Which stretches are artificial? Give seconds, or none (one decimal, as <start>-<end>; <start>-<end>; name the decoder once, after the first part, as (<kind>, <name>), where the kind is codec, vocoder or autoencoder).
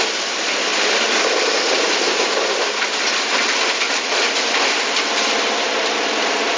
0.0-6.6 (vocoder, BigVGAN v2)